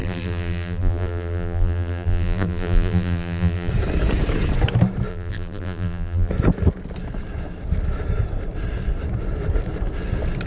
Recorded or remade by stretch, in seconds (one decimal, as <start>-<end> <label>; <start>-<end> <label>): 0.0-3.7 remade; 3.7-5.1 recorded; 5.1-6.3 remade; 6.3-10.5 recorded